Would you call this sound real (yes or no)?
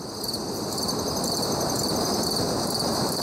no